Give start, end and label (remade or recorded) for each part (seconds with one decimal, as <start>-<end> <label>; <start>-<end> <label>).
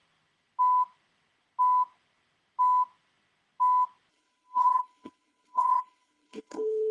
0.0-4.1 recorded; 4.1-6.9 remade